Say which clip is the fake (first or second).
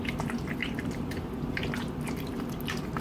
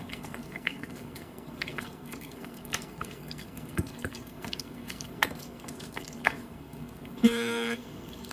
second